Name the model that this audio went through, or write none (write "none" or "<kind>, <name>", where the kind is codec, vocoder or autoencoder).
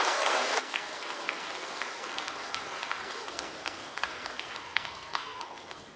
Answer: codec, SNAC